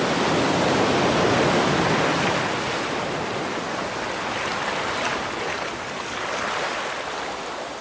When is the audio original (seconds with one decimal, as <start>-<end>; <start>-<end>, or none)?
0.0-7.8